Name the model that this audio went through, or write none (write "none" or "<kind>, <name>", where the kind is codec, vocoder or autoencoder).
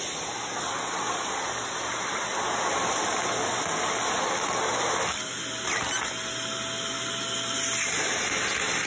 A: none